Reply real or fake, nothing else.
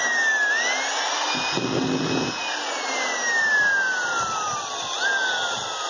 real